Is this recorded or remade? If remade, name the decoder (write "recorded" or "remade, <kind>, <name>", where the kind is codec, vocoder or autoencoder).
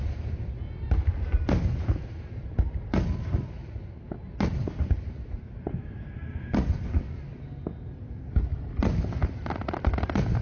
recorded